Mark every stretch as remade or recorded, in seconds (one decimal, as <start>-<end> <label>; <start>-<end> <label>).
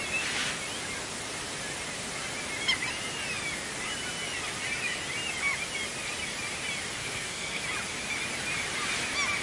0.0-7.0 recorded; 7.0-7.6 remade; 7.6-9.4 recorded